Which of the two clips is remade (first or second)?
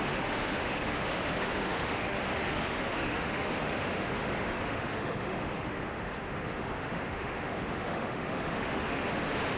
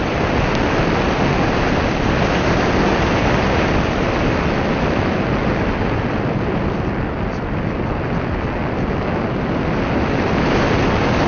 first